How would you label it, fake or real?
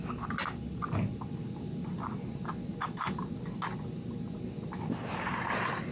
real